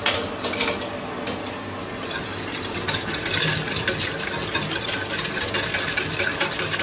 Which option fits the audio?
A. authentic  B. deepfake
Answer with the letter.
A